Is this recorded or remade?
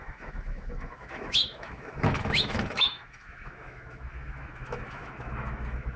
remade